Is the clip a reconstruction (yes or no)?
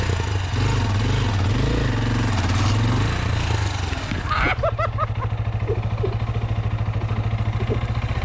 no